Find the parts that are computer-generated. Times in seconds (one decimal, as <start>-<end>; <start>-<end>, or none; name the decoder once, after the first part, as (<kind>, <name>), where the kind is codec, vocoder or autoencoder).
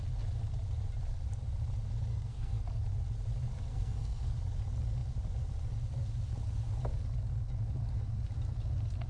2.1-2.6 (codec, SNAC); 3.7-4.3